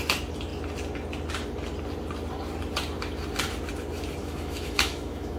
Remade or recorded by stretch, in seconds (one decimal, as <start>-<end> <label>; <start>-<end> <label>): 0.0-4.2 recorded; 4.2-5.4 remade